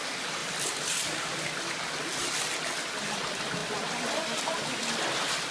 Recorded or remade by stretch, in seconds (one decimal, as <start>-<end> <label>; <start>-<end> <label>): 0.0-0.4 recorded; 0.4-1.6 remade; 1.6-3.6 recorded; 3.6-5.5 remade